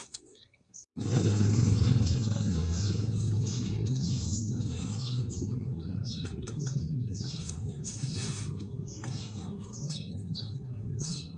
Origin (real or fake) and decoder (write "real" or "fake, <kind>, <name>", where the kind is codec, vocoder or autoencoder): fake, codec, SNAC